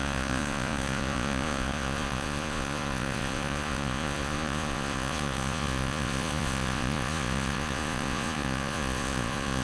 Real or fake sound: fake